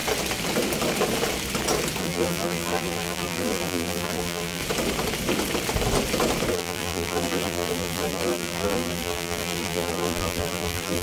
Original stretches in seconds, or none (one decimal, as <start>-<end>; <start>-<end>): 0.0-2.0; 4.6-6.5